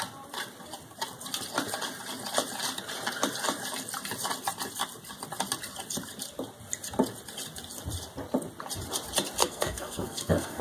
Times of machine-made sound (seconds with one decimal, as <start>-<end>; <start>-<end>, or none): 9.4-10.6